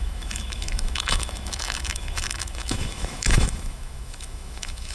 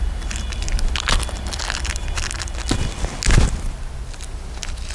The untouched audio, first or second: second